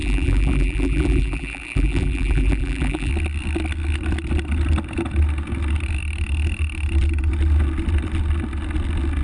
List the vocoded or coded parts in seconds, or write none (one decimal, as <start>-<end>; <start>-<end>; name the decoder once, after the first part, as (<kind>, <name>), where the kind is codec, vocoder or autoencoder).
0.0-3.1 (vocoder, BigVGAN v2)